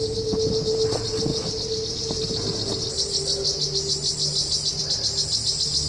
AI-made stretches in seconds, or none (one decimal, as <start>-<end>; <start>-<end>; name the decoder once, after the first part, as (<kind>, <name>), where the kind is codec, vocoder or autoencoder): none